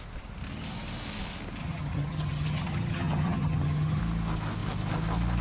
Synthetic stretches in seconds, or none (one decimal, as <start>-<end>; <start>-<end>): 1.6-4.0